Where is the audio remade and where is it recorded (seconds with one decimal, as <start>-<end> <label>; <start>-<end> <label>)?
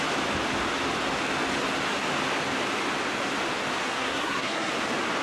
0.0-3.8 recorded; 3.8-4.7 remade; 4.7-5.2 recorded